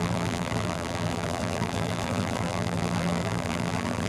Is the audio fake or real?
fake